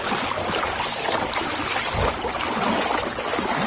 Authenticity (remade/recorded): recorded